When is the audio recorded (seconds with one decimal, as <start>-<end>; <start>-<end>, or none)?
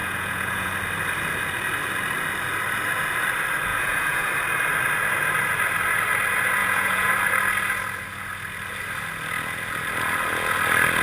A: 0.7-3.7; 4.3-6.6; 7.1-11.0